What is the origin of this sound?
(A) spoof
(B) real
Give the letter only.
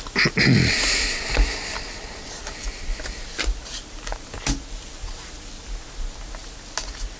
B